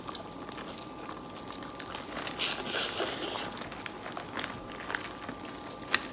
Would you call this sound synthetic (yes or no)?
no